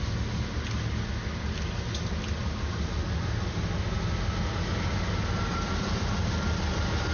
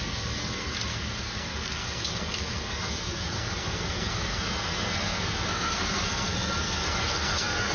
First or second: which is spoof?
second